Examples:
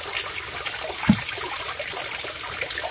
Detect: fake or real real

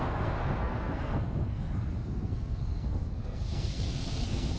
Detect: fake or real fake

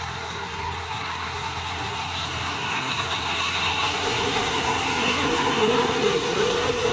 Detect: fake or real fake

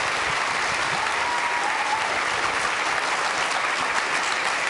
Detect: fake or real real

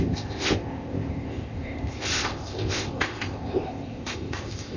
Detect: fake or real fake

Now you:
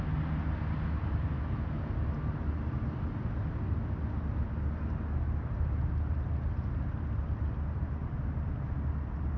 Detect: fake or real real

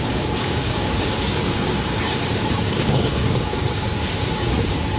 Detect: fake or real fake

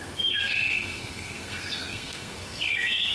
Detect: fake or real fake